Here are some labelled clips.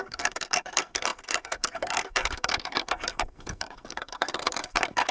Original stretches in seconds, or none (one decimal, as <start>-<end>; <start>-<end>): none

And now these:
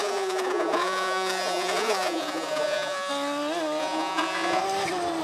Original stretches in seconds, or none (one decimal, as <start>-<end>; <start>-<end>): 3.1-3.8; 4.6-5.2

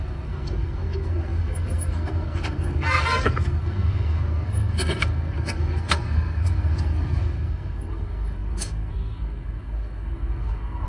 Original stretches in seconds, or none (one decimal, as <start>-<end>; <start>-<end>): none